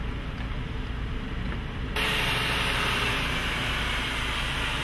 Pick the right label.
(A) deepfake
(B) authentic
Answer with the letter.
B